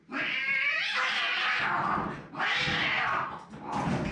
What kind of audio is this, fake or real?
real